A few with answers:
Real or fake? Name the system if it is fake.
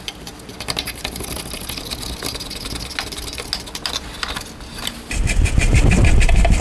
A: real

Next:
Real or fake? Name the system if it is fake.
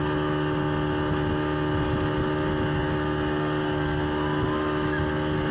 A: real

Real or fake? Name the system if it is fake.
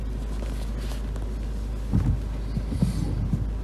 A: real